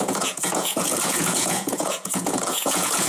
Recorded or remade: remade